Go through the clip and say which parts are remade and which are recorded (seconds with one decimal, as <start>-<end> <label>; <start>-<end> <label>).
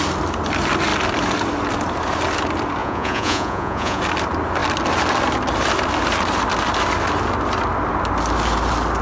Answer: 0.0-2.8 recorded; 2.8-4.0 remade; 4.0-9.0 recorded